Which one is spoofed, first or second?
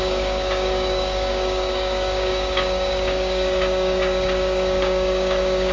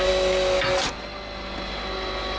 first